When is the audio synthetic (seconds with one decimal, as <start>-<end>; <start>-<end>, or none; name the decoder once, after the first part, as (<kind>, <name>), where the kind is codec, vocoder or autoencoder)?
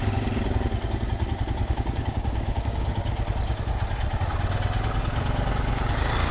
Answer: 1.6-3.1 (codec, DAC)